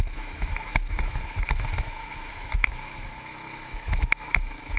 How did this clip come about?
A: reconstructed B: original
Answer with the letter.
A